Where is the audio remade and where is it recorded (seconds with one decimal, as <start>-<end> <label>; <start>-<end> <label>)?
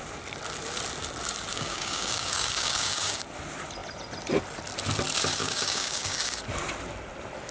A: 0.0-1.5 recorded; 1.5-3.2 remade; 3.2-5.4 recorded; 5.4-6.4 remade; 6.4-7.5 recorded